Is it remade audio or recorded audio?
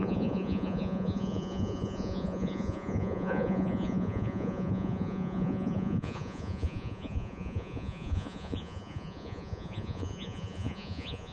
remade